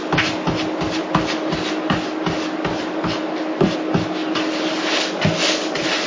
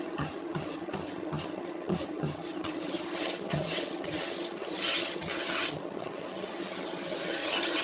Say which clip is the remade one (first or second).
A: second